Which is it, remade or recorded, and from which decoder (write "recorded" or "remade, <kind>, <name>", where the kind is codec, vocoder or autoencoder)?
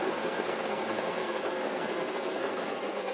remade, codec, SNAC